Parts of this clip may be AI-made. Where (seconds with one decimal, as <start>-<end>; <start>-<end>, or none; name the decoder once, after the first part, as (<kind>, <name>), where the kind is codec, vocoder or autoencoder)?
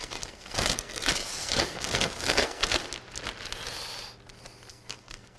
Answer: 0.0-2.8 (codec, SNAC); 4.7-5.4